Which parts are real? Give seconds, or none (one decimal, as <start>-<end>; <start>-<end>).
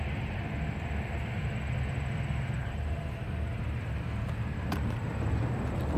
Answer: 0.0-2.6; 5.1-6.0